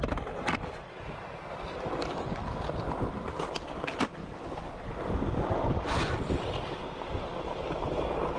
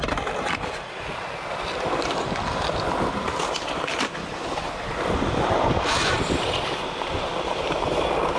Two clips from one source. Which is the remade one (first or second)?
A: second